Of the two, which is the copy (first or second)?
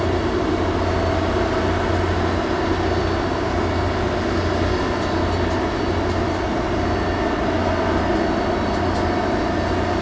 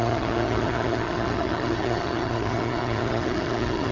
second